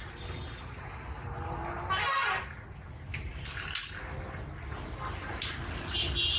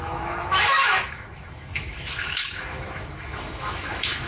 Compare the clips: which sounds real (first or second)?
first